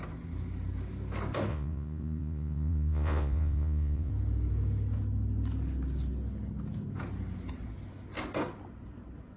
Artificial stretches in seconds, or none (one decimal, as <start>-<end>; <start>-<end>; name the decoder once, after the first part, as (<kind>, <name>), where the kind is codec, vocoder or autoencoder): 1.5-4.1 (vocoder, Vocos)